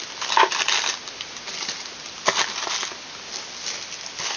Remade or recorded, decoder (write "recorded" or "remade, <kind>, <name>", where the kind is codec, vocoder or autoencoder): recorded